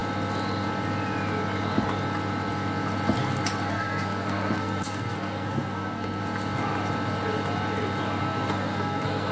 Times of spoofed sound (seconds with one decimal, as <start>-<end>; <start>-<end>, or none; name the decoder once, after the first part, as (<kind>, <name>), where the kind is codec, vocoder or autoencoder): 3.7-6.2 (codec, SNAC); 8.2-9.3